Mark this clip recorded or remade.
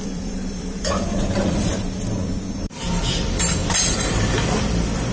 remade